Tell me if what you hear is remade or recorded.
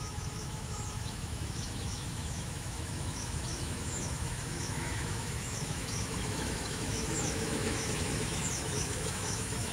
remade